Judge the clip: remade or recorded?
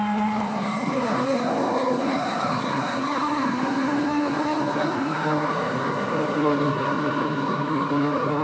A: remade